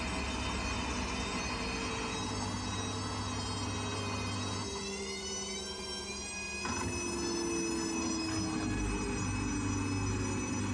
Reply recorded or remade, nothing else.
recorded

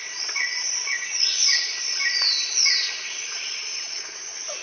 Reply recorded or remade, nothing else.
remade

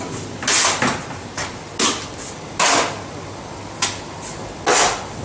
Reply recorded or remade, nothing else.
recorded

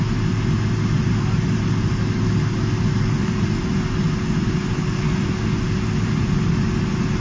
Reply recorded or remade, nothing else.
recorded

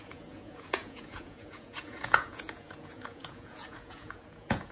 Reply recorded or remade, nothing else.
remade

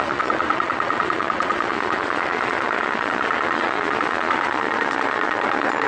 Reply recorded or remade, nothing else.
remade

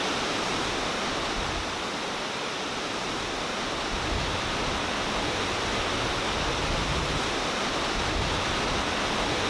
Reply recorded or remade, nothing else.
recorded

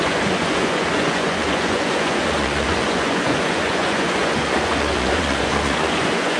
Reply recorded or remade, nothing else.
remade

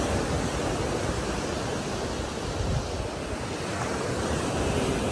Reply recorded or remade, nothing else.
recorded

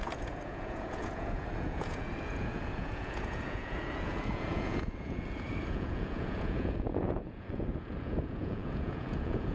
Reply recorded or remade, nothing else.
remade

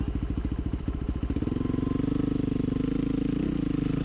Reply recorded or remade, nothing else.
recorded